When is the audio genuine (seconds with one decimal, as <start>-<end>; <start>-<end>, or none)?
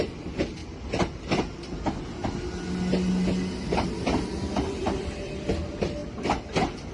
0.6-4.7